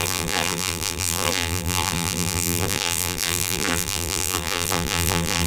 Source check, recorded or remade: remade